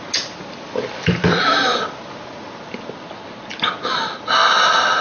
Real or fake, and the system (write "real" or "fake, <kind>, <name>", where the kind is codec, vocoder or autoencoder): real